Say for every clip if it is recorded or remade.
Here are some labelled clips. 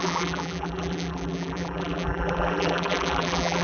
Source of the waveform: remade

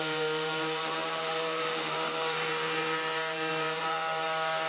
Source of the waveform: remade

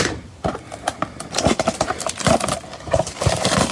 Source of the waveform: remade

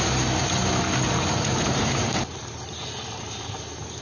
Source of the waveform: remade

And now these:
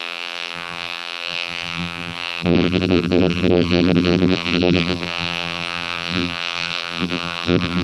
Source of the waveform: remade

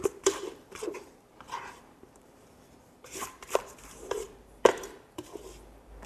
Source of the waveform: remade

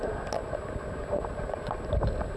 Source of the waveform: recorded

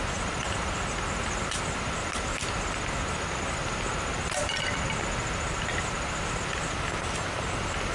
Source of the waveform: recorded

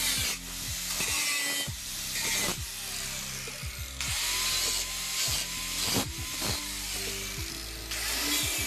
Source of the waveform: recorded